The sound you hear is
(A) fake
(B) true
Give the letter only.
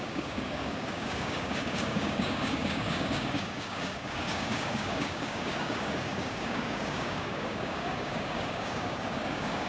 A